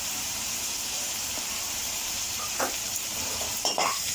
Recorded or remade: remade